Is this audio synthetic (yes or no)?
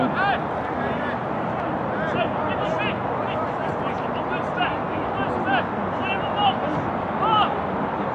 no